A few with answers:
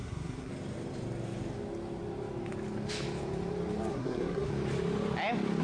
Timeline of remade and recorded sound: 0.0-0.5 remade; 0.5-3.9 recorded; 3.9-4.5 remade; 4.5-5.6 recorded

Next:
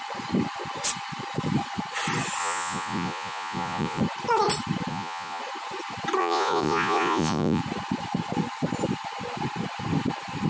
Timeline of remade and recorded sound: 0.0-2.4 recorded; 2.4-4.0 remade; 4.0-4.9 recorded; 4.9-5.4 remade; 5.4-6.2 recorded; 6.2-7.6 remade; 7.6-10.5 recorded

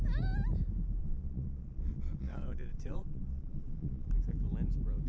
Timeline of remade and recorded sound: 0.0-1.0 recorded; 1.0-4.1 remade; 4.1-5.1 recorded

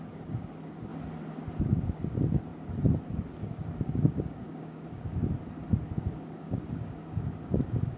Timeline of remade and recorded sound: 0.0-0.9 remade; 0.9-1.6 recorded; 1.6-2.5 remade; 2.5-3.2 recorded; 3.2-5.2 remade; 5.2-6.0 recorded; 6.0-8.0 remade

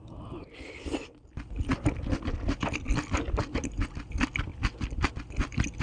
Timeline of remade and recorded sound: 0.0-5.8 recorded

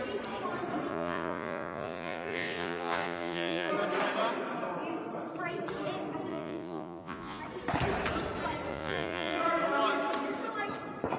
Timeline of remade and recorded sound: 0.0-0.9 recorded; 0.9-3.7 remade; 3.7-6.3 recorded; 6.3-7.4 remade; 7.4-8.7 recorded; 8.7-9.4 remade; 9.4-11.2 recorded